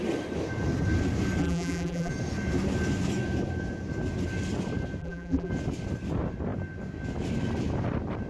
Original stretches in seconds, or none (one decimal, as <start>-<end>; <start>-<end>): 0.0-1.4; 2.1-5.0; 5.5-8.3

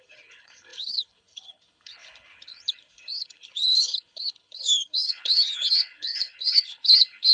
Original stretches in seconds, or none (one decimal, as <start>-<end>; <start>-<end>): none

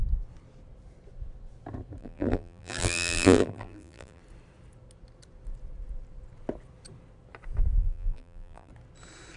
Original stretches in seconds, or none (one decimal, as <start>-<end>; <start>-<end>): 0.0-2.0; 4.2-7.8; 8.7-9.4

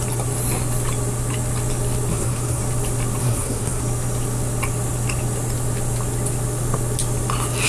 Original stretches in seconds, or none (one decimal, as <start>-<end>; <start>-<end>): 0.0-2.1; 2.6-3.2; 3.8-7.7

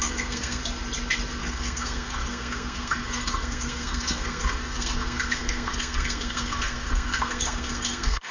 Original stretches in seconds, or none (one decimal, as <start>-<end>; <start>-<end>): 0.6-1.4

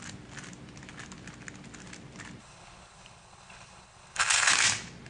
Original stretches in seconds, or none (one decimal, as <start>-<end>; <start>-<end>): 0.0-2.4; 4.5-5.1

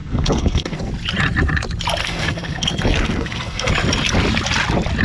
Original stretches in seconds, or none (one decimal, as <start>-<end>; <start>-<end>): 0.9-2.0; 3.7-5.0

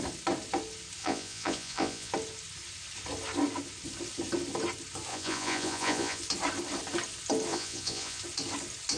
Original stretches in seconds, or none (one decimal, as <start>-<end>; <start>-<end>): 0.0-1.0; 2.1-5.1; 6.2-7.5; 8.2-9.0